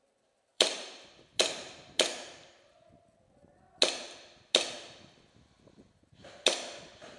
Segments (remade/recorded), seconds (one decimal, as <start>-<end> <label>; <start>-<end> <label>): 0.0-0.5 recorded; 0.5-1.4 remade; 1.4-2.1 recorded; 2.1-3.0 remade; 3.0-7.2 recorded

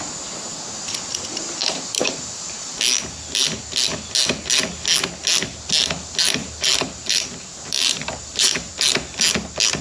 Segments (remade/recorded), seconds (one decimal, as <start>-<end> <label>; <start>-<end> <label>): 0.0-1.6 recorded; 1.6-2.7 remade; 2.7-6.4 recorded; 6.4-8.7 remade; 8.7-9.8 recorded

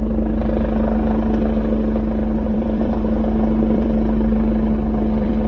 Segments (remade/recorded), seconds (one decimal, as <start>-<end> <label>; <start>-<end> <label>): 0.0-2.2 recorded; 2.2-5.5 remade

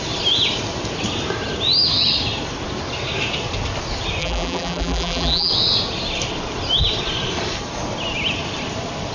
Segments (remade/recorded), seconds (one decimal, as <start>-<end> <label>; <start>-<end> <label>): 0.0-4.2 recorded; 4.2-5.5 remade; 5.5-9.1 recorded

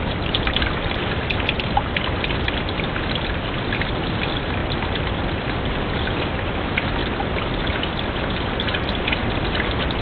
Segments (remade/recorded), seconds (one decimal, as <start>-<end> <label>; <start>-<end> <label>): 0.0-7.0 remade; 7.0-7.6 recorded; 7.6-10.0 remade